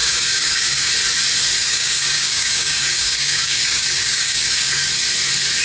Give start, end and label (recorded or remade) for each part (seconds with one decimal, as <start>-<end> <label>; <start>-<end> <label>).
0.0-0.9 remade; 0.9-1.6 recorded; 1.6-4.9 remade; 4.9-5.6 recorded